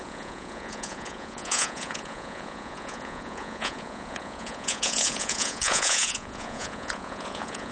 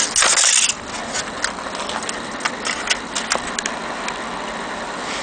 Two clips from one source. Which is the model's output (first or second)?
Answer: first